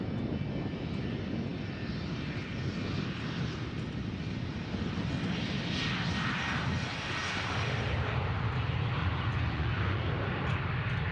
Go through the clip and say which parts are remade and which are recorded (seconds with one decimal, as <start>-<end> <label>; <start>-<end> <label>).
0.0-9.0 recorded; 9.0-10.0 remade; 10.0-11.1 recorded